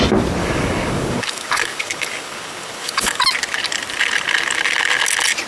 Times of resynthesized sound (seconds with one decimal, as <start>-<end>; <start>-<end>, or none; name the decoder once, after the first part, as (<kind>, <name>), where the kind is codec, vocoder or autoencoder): 0.4-3.2 (codec, DAC)